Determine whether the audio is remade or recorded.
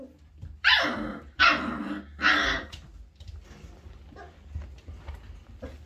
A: recorded